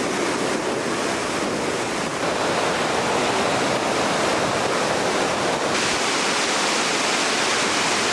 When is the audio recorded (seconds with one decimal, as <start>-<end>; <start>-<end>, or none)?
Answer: 0.0-8.1

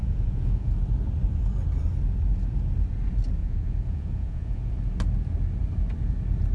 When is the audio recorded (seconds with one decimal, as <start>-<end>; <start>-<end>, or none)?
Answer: 0.7-3.4; 4.7-6.5

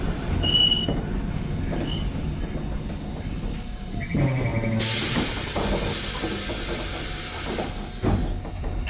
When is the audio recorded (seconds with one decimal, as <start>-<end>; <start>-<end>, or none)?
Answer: 0.0-8.9